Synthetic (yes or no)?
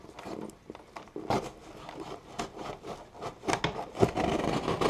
no